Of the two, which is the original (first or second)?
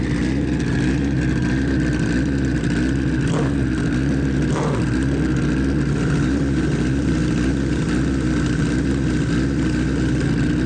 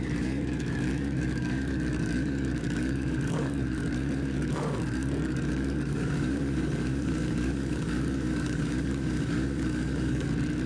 first